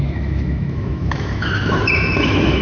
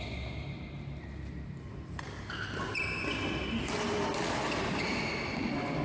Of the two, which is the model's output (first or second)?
first